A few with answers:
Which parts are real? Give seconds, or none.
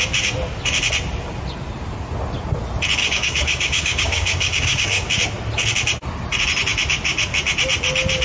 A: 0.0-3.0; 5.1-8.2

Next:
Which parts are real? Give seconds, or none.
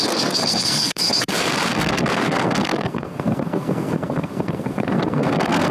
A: none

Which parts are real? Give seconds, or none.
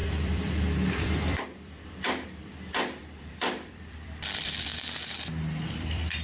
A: 4.7-5.7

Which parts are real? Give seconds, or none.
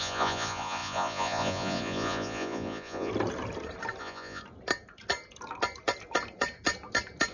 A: 3.1-4.0; 4.4-7.3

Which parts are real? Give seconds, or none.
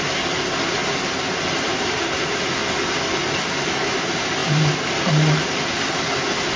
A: 2.6-3.4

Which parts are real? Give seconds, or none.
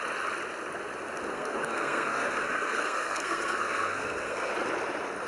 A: 0.0-1.3; 4.5-5.3